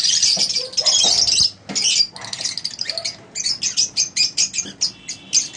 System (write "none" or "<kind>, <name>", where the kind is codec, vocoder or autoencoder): none